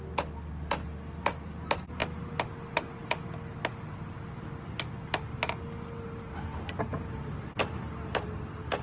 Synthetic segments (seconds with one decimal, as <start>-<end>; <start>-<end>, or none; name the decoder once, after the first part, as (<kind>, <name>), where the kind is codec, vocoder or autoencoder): none